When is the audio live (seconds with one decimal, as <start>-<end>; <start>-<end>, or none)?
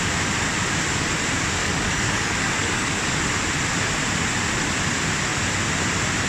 0.0-1.6; 3.2-6.3